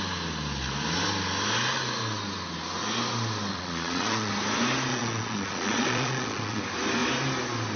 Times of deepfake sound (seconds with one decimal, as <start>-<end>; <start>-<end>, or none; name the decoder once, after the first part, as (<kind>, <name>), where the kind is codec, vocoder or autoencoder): 3.5-4.3 (vocoder, Vocos); 4.9-6.6